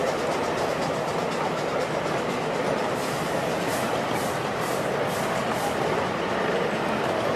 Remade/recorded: recorded